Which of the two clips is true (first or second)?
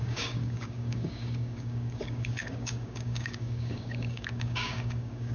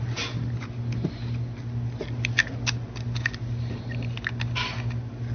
second